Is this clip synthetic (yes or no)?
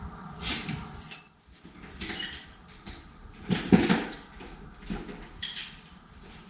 no